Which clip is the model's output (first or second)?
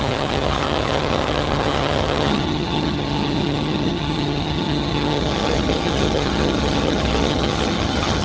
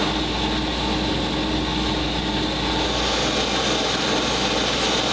first